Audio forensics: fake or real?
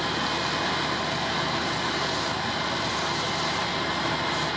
real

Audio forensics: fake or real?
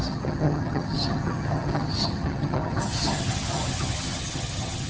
fake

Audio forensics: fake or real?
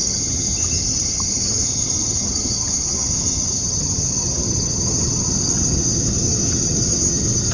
fake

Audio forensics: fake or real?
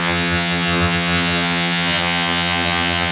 fake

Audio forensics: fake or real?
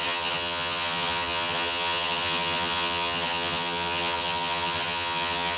fake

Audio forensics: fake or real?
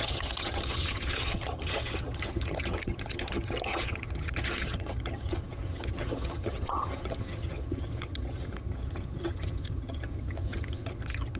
fake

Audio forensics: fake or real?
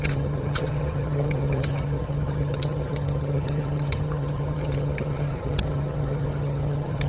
fake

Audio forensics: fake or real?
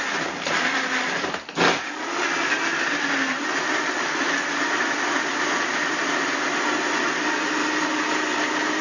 real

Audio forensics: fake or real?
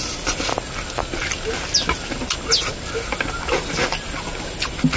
real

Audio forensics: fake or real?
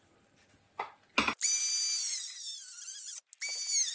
real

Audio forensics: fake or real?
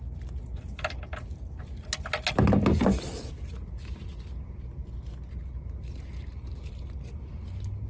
real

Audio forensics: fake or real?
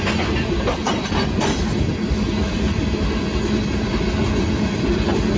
real